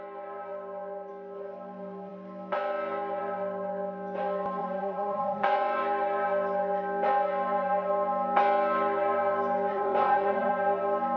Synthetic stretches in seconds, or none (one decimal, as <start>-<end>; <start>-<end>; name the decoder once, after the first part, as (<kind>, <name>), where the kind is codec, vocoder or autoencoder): 4.6-5.8 (vocoder, Vocos); 9.7-10.5